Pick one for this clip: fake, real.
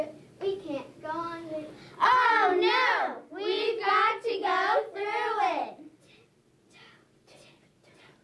real